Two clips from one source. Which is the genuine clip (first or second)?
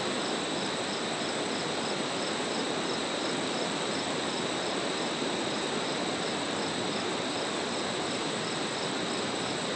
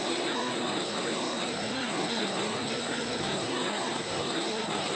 first